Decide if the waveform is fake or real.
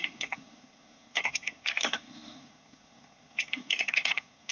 fake